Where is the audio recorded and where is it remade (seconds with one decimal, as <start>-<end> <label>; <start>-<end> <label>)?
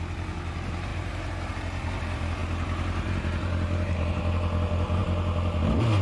0.0-0.9 recorded; 0.9-1.5 remade; 1.5-2.4 recorded; 2.4-4.2 remade; 4.2-6.0 recorded